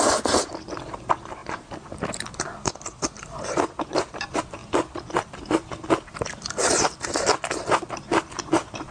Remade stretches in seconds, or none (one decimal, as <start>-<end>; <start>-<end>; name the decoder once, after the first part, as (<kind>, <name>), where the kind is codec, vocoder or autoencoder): 0.0-1.4 (vocoder, BigVGAN v2); 3.2-4.6; 5.4-8.9